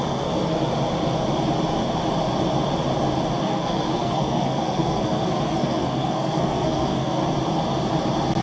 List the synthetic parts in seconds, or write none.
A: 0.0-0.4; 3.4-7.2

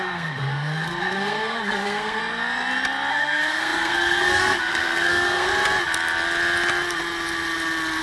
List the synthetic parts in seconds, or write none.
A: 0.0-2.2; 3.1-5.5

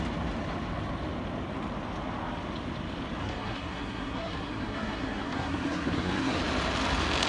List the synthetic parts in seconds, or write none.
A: 3.2-6.4